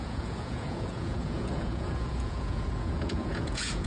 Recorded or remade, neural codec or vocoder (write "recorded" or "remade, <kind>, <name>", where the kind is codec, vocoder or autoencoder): remade, vocoder, Vocos